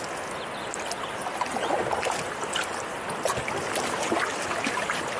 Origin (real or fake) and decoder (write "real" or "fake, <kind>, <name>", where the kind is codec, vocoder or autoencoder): real